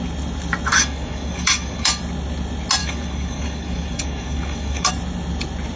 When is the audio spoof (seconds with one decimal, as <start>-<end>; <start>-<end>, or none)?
0.7-2.0; 2.8-4.9